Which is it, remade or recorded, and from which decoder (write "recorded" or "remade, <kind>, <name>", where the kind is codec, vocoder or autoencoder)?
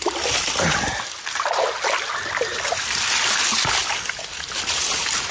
recorded